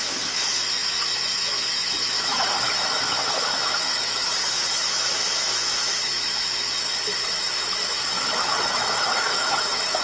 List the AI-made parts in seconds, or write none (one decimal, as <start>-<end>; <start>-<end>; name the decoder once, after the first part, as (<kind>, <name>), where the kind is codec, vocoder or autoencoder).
0.0-10.0 (autoencoder, DAC-VAE)